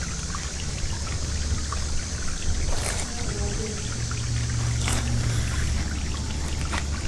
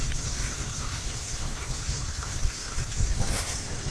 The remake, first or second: second